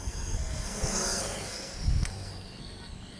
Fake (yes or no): yes